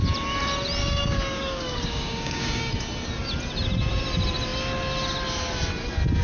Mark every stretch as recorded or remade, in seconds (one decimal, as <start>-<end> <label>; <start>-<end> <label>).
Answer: 0.0-0.8 recorded; 0.8-2.7 remade; 2.7-6.2 recorded